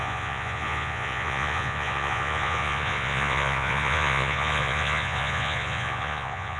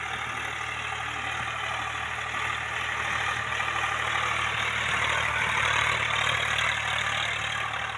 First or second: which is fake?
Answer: first